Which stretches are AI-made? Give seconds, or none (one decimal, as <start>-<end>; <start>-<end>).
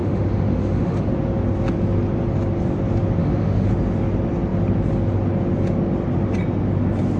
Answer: 0.0-1.1; 3.2-3.7